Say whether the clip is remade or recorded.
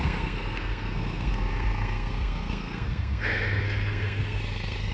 remade